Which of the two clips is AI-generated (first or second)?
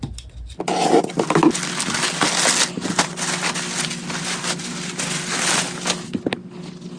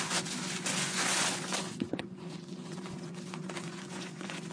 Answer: second